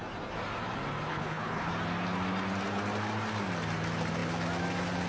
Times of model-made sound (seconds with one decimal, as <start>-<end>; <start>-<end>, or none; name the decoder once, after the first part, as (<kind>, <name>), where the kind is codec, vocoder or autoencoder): 1.1-1.7 (codec, HILCodec)